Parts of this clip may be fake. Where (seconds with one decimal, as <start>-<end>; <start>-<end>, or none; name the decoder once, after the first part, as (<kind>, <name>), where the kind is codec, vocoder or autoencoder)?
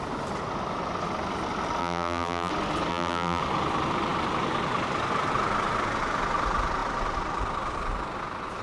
1.8-2.5 (vocoder, BigVGAN v2); 2.9-3.4